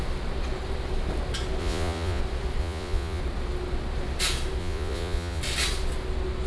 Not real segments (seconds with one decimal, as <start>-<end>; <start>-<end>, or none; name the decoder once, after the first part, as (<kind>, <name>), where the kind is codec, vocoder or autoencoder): 1.6-2.2 (vocoder, Vocos); 2.6-3.2; 4.6-5.4